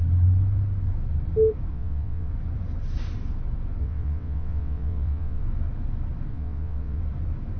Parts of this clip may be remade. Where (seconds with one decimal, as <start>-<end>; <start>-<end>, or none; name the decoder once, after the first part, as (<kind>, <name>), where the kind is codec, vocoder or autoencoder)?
1.7-2.3 (vocoder, WaveNeXt); 3.8-5.4; 6.3-7.0